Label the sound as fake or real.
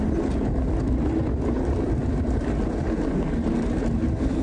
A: real